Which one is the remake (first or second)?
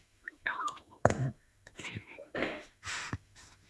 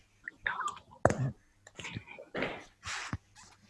first